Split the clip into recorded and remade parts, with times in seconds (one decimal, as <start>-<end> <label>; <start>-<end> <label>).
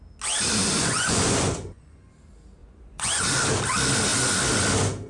0.0-0.6 recorded; 0.6-2.1 remade; 2.1-2.6 recorded; 2.6-3.2 remade; 3.2-5.1 recorded